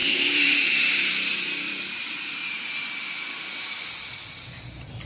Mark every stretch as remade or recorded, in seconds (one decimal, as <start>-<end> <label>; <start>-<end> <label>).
0.0-2.9 remade; 2.9-5.1 recorded